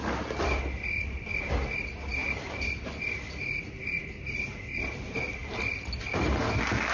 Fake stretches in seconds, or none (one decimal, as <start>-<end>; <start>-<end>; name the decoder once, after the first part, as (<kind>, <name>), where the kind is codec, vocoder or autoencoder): none

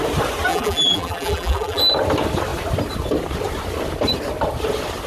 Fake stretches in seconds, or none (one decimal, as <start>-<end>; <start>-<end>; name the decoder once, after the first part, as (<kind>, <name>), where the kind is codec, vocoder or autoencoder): 0.5-1.8 (vocoder, BigVGAN v2)

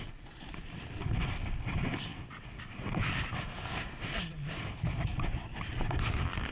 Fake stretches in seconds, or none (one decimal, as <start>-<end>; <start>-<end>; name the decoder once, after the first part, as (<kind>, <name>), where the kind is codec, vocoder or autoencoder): 0.0-2.1 (vocoder, BigVGAN v2); 3.7-5.1; 5.7-6.5

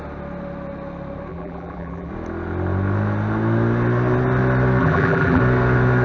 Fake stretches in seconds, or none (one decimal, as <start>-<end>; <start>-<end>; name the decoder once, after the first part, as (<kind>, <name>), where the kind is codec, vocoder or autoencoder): 1.3-2.1 (vocoder, BigVGAN v2); 4.8-5.4

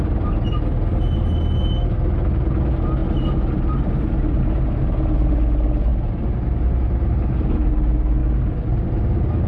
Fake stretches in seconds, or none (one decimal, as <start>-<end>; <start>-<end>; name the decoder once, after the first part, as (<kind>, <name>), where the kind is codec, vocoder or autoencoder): none

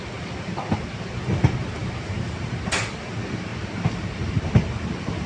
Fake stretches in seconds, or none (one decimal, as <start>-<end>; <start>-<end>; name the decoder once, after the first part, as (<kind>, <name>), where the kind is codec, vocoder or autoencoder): 1.8-2.5 (vocoder, BigVGAN v2)